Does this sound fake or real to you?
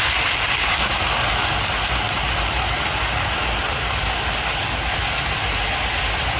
real